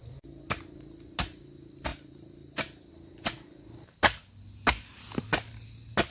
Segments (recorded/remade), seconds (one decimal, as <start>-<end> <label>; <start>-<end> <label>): 0.0-1.9 recorded; 1.9-2.9 remade; 2.9-6.1 recorded